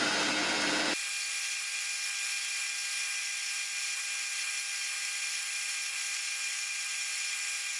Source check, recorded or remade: recorded